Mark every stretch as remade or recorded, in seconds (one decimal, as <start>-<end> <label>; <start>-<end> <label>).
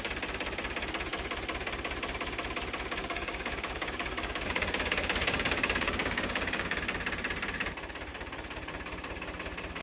0.0-3.0 recorded; 3.0-6.8 remade; 6.8-9.8 recorded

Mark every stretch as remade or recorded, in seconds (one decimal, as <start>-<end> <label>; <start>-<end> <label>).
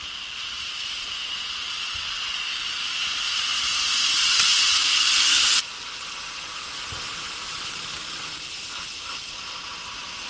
0.0-10.3 recorded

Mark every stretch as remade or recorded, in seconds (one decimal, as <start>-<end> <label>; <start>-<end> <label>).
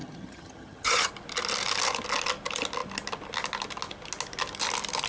0.0-1.1 remade; 1.1-5.1 recorded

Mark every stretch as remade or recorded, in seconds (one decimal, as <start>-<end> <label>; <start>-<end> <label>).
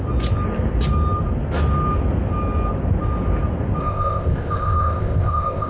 0.0-3.8 recorded; 3.8-5.7 remade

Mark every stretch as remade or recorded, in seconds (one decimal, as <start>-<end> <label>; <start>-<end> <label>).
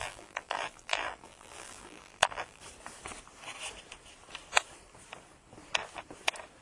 0.0-2.6 remade; 2.6-6.6 recorded